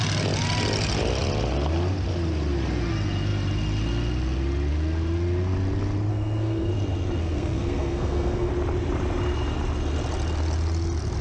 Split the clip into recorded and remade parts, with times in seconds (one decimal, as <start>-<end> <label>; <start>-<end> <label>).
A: 0.0-6.1 recorded; 6.1-6.7 remade; 6.7-7.2 recorded; 7.2-8.5 remade; 8.5-11.2 recorded